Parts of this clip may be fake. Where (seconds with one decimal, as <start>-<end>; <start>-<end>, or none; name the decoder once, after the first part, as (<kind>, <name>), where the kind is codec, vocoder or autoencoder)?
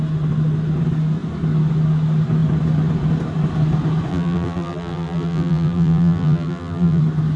4.1-7.0 (vocoder, BigVGAN v2)